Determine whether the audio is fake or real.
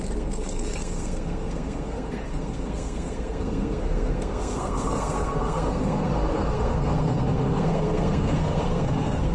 fake